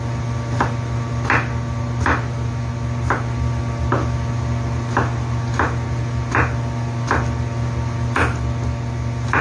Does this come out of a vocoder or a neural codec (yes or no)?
no